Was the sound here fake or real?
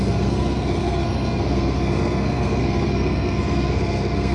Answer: fake